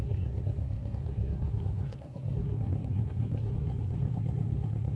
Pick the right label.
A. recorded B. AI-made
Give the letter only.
B